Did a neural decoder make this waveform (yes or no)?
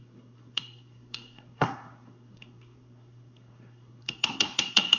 yes